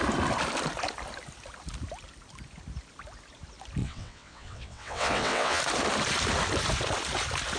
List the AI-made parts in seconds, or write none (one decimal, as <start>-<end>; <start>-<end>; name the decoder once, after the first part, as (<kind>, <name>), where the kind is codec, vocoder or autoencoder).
3.8-5.6 (vocoder, WaveNeXt)